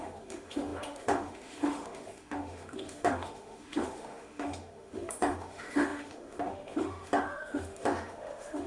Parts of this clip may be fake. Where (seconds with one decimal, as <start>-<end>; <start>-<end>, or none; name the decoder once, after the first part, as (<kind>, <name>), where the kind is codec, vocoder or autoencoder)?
0.0-8.7 (autoencoder, DAC-VAE)